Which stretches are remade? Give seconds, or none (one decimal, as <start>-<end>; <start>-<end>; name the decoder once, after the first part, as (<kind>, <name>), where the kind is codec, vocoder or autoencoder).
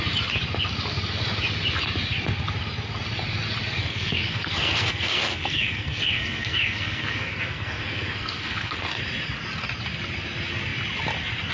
3.8-9.0 (codec, SNAC)